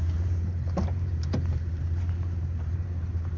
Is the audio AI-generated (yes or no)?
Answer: yes